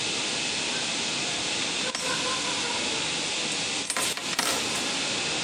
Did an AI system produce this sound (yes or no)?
no